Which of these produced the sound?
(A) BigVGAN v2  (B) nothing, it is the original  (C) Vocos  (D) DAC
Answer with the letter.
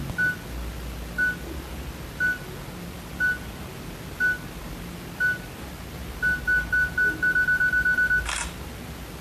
B